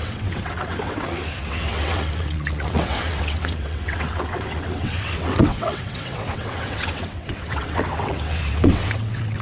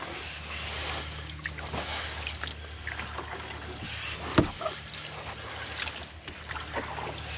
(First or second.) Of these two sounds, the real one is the second